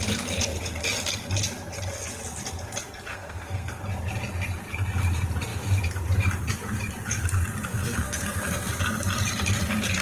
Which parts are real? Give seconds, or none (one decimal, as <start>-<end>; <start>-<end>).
0.0-3.1; 3.8-7.7; 8.7-10.0